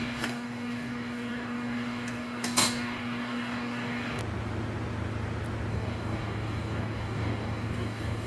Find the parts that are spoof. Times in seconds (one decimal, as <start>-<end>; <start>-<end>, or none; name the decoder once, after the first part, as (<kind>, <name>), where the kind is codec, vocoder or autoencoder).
0.0-4.2 (codec, DAC); 5.7-8.3